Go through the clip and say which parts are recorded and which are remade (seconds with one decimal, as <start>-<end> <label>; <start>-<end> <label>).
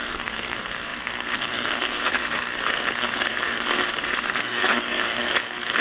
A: 0.0-5.8 remade